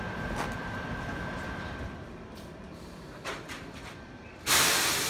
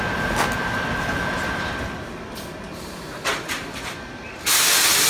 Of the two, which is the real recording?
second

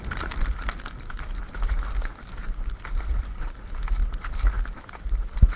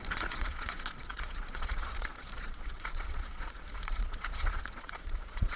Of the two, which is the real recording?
first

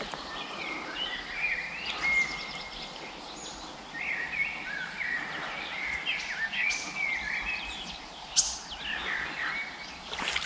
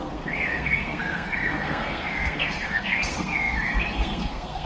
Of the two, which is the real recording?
first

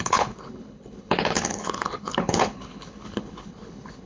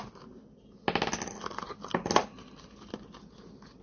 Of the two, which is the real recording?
second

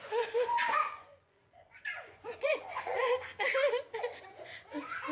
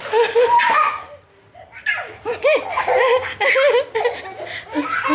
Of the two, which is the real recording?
second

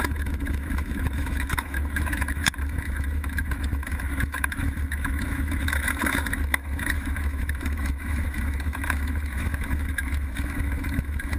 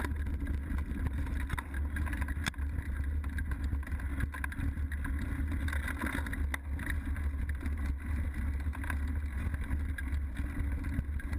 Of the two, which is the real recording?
second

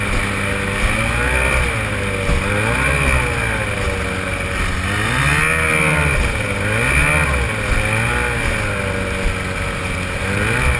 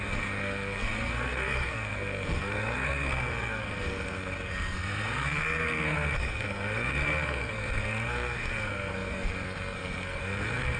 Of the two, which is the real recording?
first